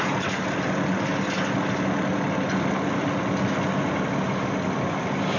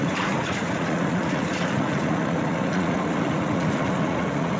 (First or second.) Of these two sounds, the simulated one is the second